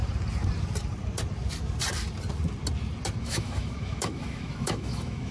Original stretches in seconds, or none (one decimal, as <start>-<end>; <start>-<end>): 0.0-3.2